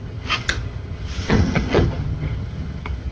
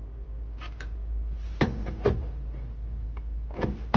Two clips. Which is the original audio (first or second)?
second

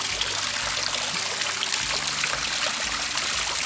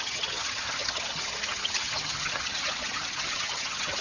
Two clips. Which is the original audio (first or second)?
first